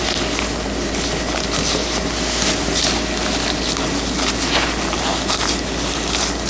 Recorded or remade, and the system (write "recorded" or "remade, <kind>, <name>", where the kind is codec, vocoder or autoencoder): recorded